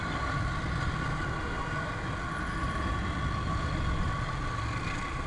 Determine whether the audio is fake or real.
real